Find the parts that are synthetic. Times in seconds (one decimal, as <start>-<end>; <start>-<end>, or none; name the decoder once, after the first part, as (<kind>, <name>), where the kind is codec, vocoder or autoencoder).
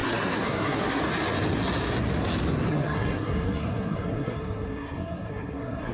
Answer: 0.0-1.0 (codec, SNAC); 2.7-5.9